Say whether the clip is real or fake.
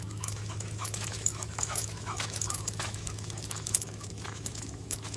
fake